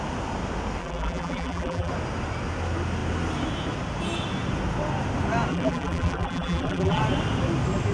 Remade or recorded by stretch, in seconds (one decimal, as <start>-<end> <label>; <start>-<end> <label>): 0.0-0.8 recorded; 0.8-1.9 remade; 1.9-5.5 recorded; 5.5-7.0 remade; 7.0-7.9 recorded